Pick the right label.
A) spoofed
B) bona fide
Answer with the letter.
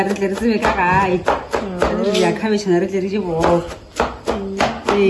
B